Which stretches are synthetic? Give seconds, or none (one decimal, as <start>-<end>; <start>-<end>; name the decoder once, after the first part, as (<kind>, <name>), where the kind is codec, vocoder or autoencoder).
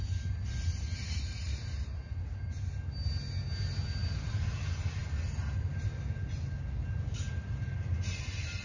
none